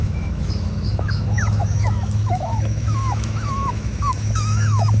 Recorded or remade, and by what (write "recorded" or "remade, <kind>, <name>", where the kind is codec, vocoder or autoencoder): remade, autoencoder, DAC-VAE